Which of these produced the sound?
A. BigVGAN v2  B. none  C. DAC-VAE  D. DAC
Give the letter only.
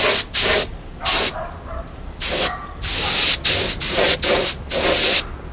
B